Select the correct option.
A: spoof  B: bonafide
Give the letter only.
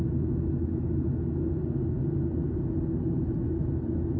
B